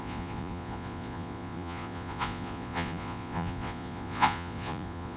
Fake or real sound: fake